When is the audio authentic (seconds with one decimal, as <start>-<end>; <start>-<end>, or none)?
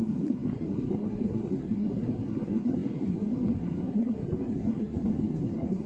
none